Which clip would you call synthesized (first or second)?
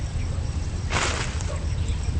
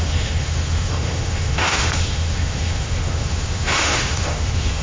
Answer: second